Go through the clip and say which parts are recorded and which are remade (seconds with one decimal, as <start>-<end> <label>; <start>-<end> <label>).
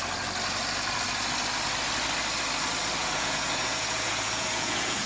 0.0-3.0 recorded; 3.0-5.1 remade